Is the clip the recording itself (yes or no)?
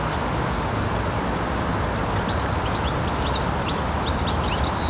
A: yes